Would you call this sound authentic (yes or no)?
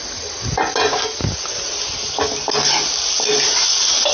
yes